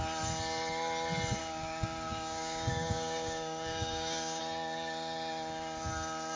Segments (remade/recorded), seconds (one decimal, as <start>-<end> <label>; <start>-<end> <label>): 0.0-1.4 recorded; 1.4-4.4 remade; 4.4-6.4 recorded